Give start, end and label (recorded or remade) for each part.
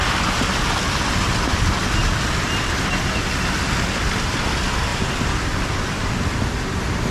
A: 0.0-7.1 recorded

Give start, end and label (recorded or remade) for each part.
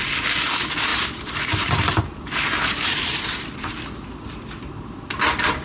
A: 0.0-0.9 recorded; 0.9-3.5 remade; 3.5-5.6 recorded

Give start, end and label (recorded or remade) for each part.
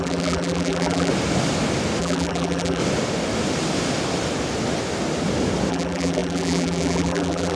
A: 0.0-1.1 remade; 1.1-2.0 recorded; 2.0-2.8 remade; 2.8-5.7 recorded; 5.7-7.6 remade